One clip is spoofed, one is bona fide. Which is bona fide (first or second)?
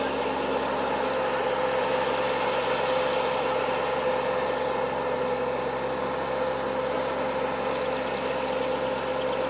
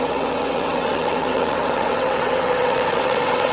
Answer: first